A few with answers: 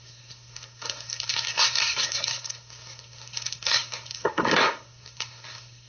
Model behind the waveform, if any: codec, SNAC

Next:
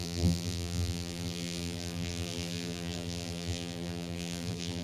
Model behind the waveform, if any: vocoder, BigVGAN v2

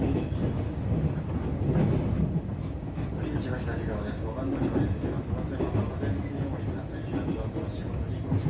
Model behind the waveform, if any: none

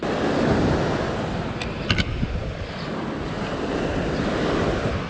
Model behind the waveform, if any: none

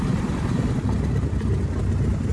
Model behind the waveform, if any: none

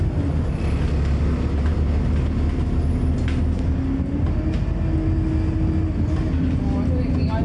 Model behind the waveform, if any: none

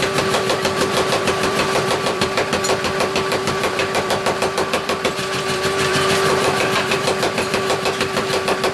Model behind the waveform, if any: vocoder, BigVGAN v2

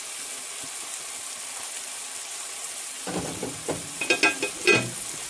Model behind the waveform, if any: none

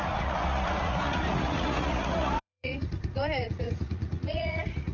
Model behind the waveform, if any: vocoder, Vocos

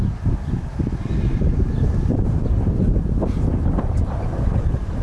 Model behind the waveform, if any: none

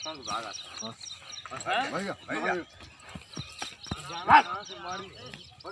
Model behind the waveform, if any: none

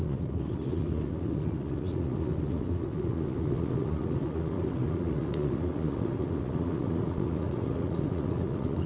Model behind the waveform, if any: vocoder, Vocos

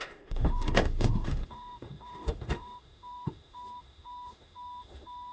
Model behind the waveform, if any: autoencoder, DAC-VAE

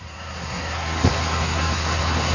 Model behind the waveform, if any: codec, SNAC